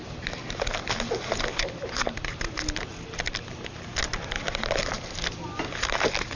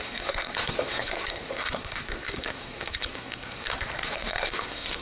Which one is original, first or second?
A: first